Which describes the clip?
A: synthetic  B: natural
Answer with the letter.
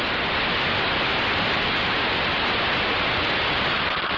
B